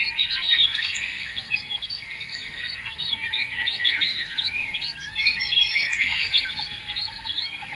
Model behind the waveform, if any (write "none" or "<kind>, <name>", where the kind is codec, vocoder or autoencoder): codec, SNAC